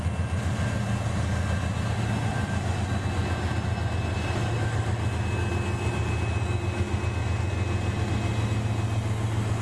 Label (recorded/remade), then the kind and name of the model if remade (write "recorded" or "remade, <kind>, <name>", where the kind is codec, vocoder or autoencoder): recorded